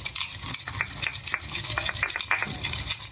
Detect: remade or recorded recorded